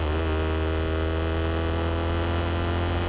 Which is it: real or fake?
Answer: real